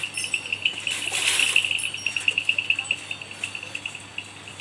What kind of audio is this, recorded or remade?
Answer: recorded